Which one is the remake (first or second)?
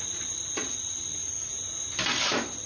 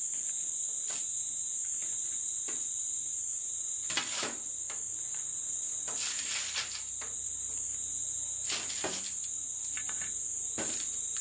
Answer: second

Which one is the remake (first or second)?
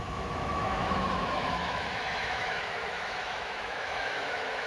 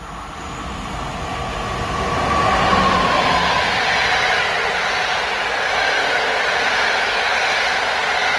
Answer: first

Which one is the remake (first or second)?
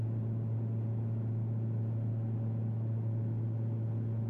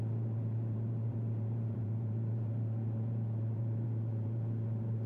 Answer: second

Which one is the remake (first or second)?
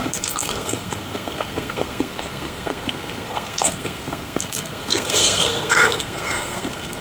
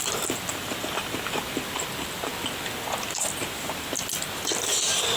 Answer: first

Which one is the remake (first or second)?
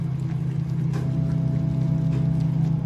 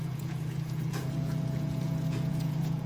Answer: second